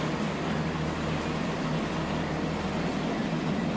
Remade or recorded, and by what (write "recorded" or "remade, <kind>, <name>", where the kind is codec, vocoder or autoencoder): recorded